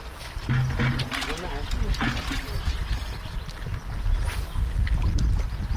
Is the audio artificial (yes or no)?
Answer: no